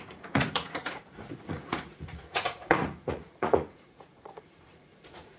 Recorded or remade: remade